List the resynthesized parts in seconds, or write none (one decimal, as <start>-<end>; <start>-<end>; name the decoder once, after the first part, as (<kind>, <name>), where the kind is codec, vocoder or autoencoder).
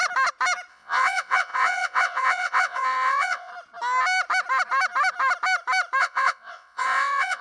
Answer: 0.7-3.5 (vocoder, WaveNeXt); 6.0-7.4